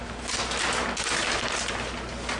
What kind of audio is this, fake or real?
real